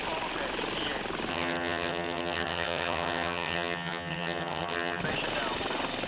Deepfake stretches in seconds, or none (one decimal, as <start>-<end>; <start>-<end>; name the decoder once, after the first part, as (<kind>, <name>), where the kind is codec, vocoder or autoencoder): 1.3-5.0 (vocoder, HiFi-GAN)